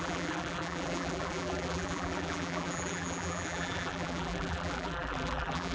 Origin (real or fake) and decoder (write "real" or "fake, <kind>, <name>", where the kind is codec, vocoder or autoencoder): fake, vocoder, BigVGAN v2